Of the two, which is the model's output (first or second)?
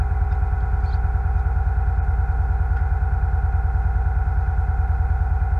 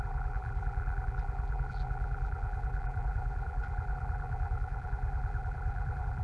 second